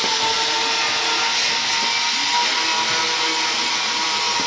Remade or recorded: recorded